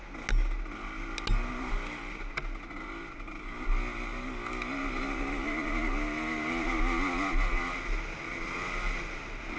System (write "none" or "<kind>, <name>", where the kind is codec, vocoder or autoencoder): none